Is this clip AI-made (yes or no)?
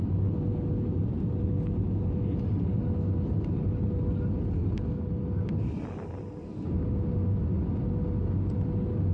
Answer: no